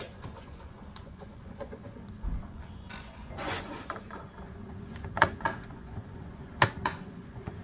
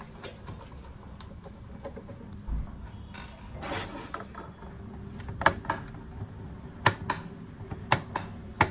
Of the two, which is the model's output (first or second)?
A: first